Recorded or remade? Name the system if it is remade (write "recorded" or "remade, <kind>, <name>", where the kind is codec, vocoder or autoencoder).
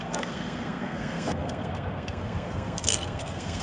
remade, codec, SNAC